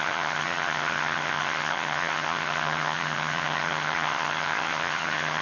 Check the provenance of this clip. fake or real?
fake